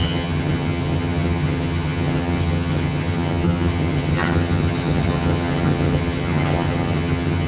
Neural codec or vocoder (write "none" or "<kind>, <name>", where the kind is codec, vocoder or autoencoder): vocoder, HiFi-GAN